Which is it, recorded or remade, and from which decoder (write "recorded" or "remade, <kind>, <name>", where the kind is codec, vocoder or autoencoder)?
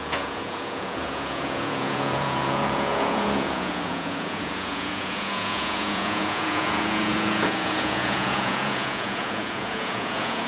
remade, vocoder, Vocos